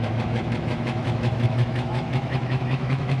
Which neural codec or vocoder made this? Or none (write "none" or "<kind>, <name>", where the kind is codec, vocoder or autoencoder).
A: autoencoder, DAC-VAE